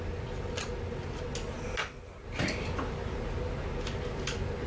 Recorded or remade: recorded